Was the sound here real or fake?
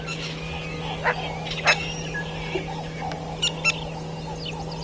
real